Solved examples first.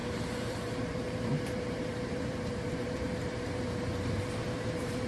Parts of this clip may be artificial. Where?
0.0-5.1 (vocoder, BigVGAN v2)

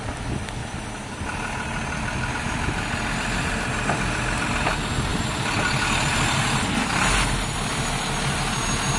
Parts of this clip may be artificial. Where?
none

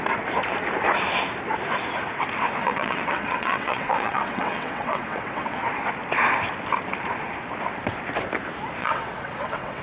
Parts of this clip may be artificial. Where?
2.6-5.6 (vocoder, WaveNeXt); 8.8-9.8

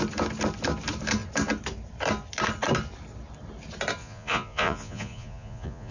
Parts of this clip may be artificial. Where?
4.0-5.9 (vocoder, Vocos)